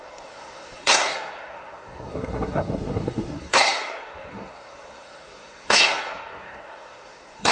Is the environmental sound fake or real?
fake